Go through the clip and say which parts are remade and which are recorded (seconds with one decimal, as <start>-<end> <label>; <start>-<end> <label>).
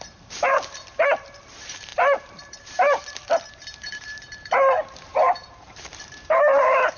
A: 0.0-7.0 remade